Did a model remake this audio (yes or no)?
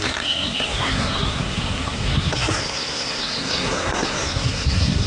yes